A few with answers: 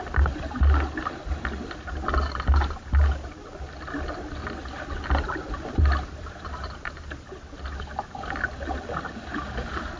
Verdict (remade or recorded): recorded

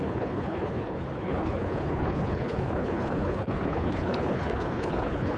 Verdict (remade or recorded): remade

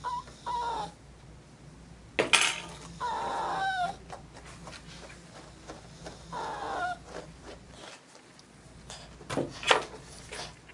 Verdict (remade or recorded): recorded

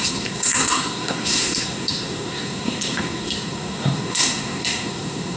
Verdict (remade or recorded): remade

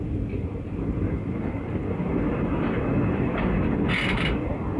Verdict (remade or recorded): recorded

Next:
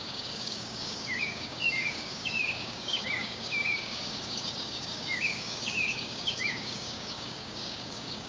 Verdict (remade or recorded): remade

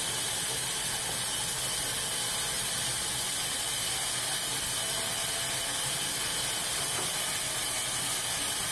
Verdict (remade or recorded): recorded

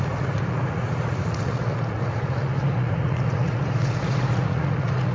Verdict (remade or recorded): remade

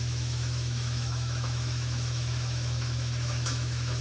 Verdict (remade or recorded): remade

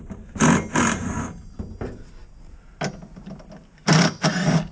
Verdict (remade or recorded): recorded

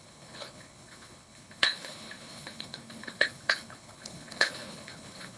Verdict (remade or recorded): remade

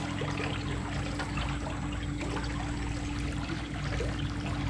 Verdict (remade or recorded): recorded